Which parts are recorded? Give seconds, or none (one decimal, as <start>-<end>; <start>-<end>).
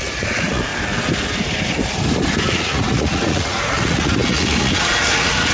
0.7-2.5